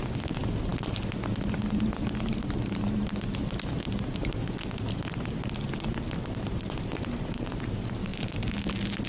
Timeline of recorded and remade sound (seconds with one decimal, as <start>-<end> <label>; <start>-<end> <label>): 0.0-8.1 recorded; 8.1-8.7 remade; 8.7-9.1 recorded